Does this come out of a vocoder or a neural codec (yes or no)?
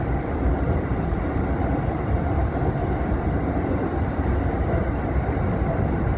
yes